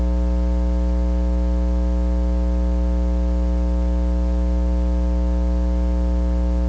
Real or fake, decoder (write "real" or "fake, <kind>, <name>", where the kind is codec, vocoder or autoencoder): real